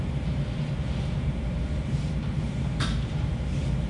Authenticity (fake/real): fake